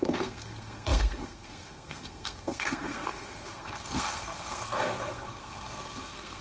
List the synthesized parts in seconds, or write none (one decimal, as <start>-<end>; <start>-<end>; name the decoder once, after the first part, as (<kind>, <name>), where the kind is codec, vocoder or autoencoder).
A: 0.0-6.4 (codec, SNAC)